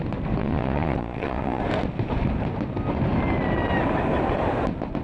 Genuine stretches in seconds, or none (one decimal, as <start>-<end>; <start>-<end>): 0.0-0.4; 1.6-5.0